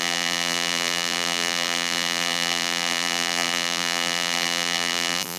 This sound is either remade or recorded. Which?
remade